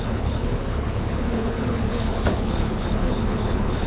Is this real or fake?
fake